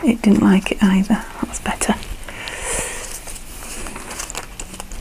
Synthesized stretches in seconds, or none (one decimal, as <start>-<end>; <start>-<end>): none